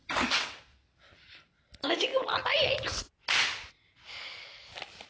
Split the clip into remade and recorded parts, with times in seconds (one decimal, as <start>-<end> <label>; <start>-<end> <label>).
0.0-0.6 remade; 0.6-5.1 recorded